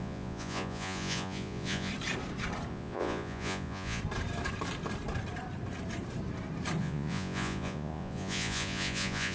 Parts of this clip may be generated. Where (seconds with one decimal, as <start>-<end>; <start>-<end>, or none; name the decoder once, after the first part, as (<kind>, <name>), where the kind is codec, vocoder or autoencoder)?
0.0-1.9 (vocoder, Vocos); 2.7-4.0; 6.8-9.3